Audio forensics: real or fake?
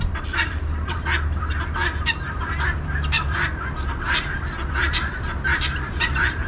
fake